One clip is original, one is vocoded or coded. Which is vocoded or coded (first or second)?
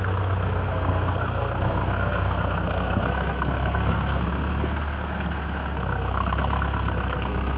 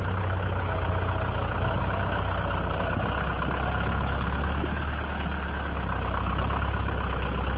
first